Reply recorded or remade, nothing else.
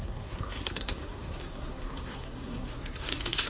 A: remade